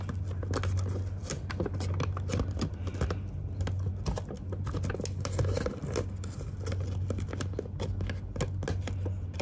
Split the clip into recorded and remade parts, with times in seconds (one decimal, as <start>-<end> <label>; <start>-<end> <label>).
0.0-9.4 recorded